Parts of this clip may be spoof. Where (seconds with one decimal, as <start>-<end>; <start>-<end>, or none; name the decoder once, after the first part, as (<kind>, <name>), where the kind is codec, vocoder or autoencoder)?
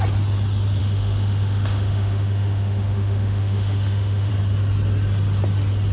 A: 0.8-4.3 (autoencoder, DAC-VAE)